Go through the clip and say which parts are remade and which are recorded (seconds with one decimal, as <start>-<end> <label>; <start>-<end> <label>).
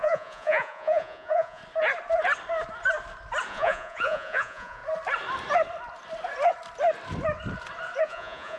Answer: 0.0-1.6 remade; 1.6-3.5 recorded; 3.5-4.8 remade; 4.8-8.0 recorded; 8.0-8.6 remade